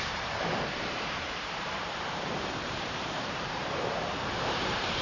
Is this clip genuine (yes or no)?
no